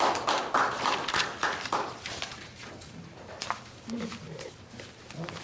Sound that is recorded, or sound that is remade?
remade